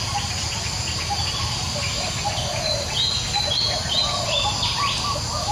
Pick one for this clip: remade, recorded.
recorded